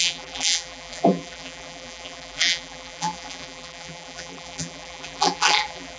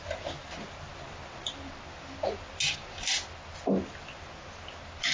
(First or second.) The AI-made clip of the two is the first